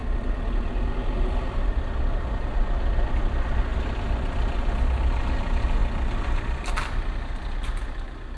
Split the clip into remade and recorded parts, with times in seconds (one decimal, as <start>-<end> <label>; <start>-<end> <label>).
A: 0.0-3.7 recorded; 3.7-4.8 remade; 4.8-5.8 recorded; 5.8-6.7 remade; 6.7-8.4 recorded